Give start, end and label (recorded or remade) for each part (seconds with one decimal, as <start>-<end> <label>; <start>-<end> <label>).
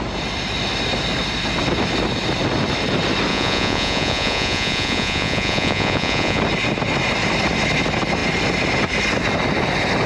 0.0-3.3 recorded; 3.3-6.4 remade; 6.4-10.1 recorded